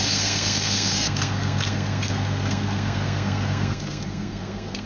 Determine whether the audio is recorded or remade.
remade